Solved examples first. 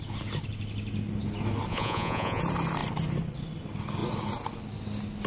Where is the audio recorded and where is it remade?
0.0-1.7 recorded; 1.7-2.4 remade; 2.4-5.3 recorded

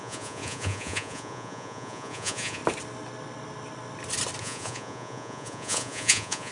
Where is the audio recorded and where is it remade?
0.0-2.6 remade; 2.6-4.4 recorded; 4.4-6.5 remade

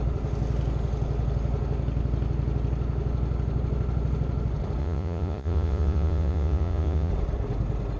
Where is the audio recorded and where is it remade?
0.0-4.8 recorded; 4.8-7.1 remade; 7.1-8.0 recorded

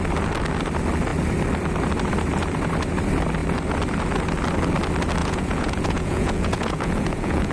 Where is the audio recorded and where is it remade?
0.0-5.2 recorded; 5.2-7.5 remade

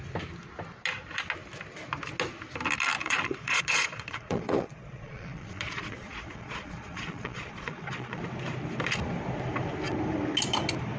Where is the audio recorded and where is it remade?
0.0-3.0 recorded; 3.0-8.2 remade; 8.2-11.0 recorded

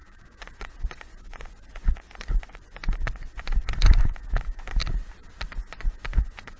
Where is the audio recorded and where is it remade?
0.0-4.8 remade; 4.8-5.6 recorded; 5.6-6.6 remade

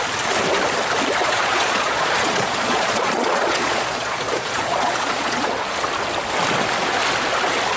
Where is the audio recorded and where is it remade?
0.0-1.2 recorded; 1.2-5.5 remade; 5.5-7.8 recorded